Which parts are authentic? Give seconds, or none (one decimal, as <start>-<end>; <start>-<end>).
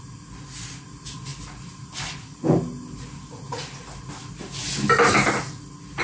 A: 0.0-6.0